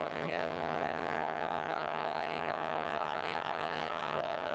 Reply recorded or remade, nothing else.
remade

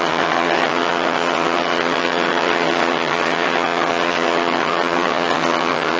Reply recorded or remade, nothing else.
remade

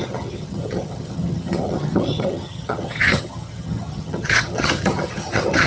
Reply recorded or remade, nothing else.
remade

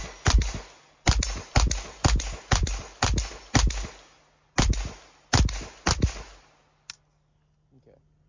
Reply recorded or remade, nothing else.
recorded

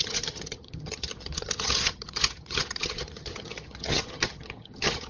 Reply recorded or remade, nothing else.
remade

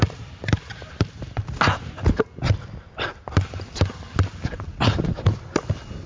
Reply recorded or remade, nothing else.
recorded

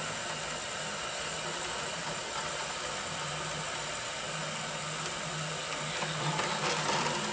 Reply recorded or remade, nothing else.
recorded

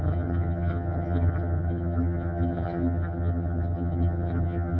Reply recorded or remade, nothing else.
remade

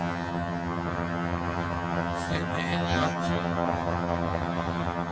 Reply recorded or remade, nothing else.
remade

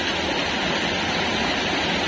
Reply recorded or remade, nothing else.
recorded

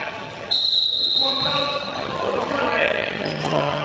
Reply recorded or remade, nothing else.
remade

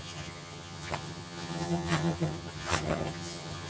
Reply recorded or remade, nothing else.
remade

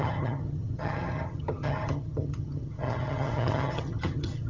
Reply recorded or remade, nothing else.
remade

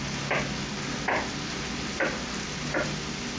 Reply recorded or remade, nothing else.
recorded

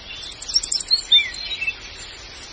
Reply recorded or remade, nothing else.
recorded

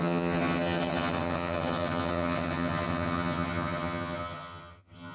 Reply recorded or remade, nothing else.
remade